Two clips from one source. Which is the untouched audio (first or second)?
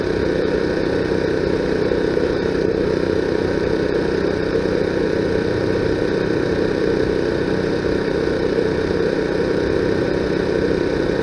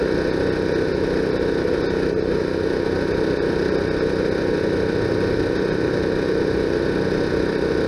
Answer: second